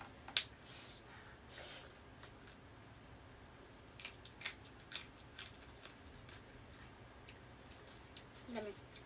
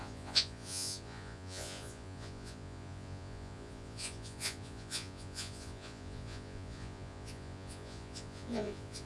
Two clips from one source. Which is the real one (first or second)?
first